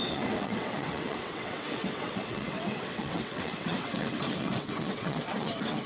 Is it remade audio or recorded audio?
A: remade